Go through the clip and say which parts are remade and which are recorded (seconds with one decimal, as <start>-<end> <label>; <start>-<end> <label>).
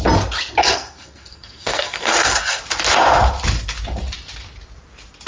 0.0-0.6 recorded; 0.6-2.6 remade; 2.6-5.3 recorded